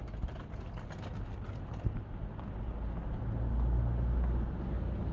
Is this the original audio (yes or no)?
yes